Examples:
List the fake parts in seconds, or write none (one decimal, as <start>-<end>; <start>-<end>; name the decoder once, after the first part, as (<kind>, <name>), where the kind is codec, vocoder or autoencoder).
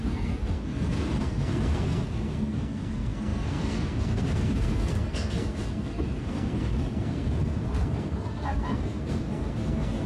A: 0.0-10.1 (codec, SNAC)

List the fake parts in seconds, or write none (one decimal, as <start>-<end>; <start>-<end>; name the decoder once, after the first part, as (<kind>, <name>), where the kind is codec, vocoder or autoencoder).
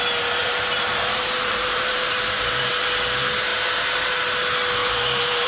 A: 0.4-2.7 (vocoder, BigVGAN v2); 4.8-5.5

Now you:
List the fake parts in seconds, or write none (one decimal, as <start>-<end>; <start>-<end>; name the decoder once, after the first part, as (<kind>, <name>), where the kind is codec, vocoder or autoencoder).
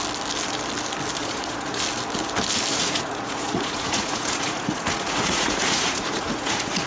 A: 1.2-1.8 (vocoder, Vocos); 2.7-6.9